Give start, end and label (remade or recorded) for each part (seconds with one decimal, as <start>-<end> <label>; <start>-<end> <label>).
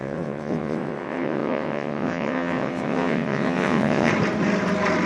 0.0-4.1 remade; 4.1-5.1 recorded